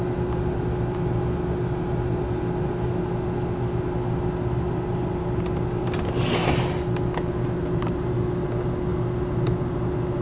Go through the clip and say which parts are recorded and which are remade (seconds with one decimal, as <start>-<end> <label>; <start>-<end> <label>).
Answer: 0.0-10.2 recorded